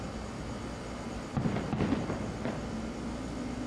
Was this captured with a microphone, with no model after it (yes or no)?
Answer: yes